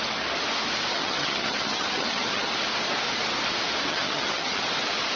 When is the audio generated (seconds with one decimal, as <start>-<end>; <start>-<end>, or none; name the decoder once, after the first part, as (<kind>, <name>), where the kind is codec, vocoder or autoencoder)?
0.9-2.5 (vocoder, HiFi-GAN); 3.9-4.6